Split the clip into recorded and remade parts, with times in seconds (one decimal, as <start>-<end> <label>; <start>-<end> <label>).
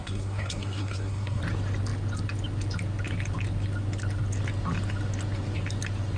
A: 0.0-1.4 remade; 1.4-6.2 recorded